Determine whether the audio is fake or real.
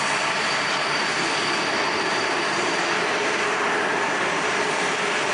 real